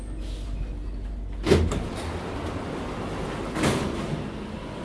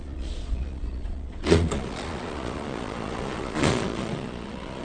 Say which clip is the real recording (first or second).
first